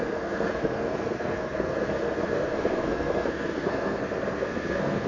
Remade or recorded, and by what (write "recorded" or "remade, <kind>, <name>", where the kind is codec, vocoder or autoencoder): remade, codec, SNAC